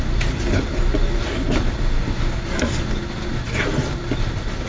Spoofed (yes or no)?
no